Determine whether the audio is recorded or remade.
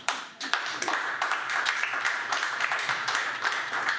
remade